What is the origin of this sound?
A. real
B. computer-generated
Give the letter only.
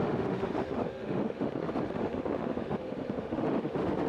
B